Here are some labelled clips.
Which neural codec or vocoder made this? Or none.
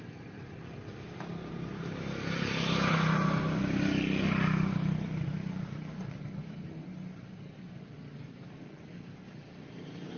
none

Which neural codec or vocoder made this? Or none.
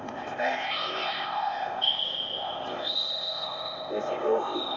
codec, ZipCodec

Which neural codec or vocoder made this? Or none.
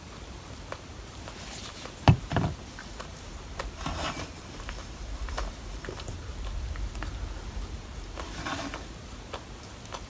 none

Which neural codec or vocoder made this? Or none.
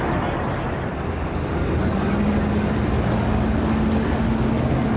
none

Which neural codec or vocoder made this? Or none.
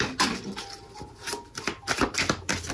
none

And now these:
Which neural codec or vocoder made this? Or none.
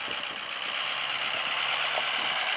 none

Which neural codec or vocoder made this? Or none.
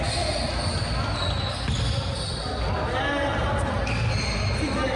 none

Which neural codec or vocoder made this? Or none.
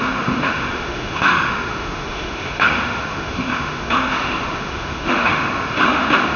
autoencoder, DAC-VAE